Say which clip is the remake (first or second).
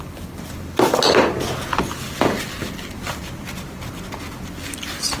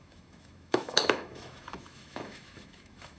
second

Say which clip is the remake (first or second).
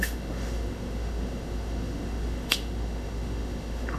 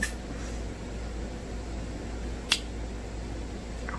first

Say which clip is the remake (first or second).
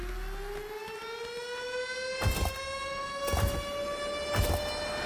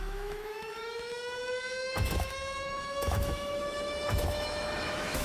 second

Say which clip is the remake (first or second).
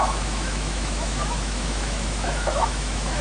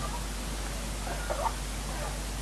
first